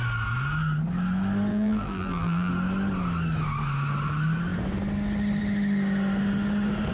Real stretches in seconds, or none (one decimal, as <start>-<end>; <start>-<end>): 0.0-1.5; 2.5-6.9